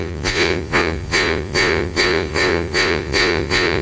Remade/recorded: remade